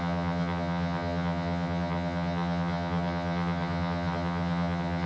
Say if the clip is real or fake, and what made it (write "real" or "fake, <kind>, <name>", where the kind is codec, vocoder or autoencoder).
fake, vocoder, HiFi-GAN